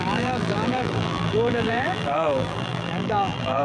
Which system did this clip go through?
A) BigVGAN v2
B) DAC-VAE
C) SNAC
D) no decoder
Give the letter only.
A